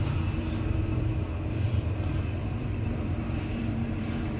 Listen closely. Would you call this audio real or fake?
fake